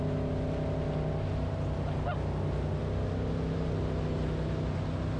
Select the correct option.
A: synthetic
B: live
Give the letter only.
B